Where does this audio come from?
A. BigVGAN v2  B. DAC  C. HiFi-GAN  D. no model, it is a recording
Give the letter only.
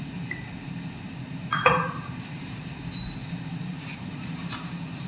A